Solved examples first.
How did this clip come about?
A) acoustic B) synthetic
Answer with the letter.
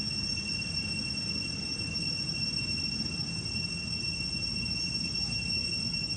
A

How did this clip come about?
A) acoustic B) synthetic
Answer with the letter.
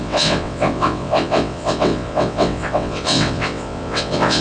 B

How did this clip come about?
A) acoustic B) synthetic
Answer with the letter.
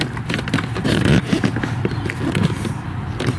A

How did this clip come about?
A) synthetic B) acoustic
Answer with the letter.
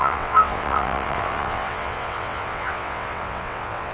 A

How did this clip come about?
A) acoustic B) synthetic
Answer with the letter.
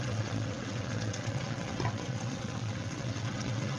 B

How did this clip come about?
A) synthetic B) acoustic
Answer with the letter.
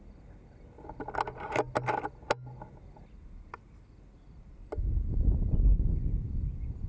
B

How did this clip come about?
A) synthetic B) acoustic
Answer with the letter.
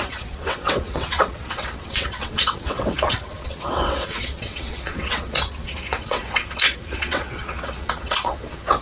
A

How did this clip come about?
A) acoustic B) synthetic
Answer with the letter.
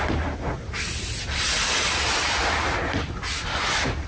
A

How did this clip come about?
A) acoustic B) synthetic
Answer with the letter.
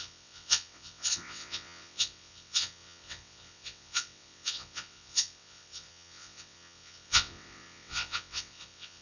B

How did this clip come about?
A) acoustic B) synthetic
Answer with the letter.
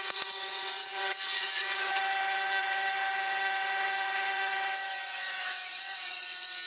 B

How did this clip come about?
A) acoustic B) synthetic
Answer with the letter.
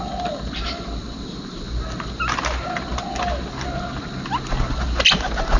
A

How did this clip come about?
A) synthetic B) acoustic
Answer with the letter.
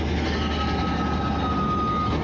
B